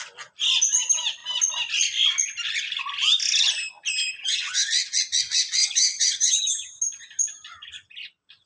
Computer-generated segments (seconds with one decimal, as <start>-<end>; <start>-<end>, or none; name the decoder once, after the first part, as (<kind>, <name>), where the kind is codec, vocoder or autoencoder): 4.1-4.7 (vocoder, HiFi-GAN); 5.6-6.8